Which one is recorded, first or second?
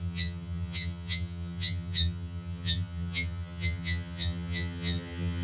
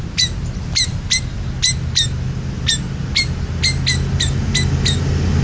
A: second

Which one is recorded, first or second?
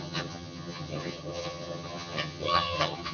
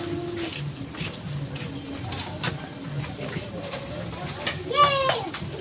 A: second